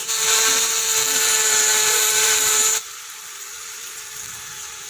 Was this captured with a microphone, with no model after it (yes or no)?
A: no